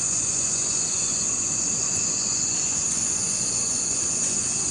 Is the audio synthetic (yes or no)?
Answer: yes